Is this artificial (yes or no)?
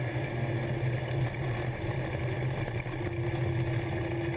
no